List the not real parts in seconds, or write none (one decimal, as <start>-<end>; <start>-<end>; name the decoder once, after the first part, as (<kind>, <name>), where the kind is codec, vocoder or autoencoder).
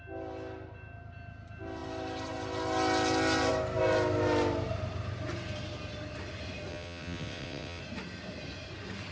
6.7-7.8 (vocoder, WaveNeXt)